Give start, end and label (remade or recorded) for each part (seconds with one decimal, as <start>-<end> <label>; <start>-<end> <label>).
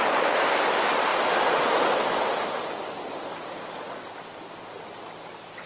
0.0-5.7 recorded